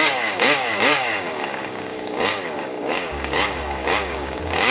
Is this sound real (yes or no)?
no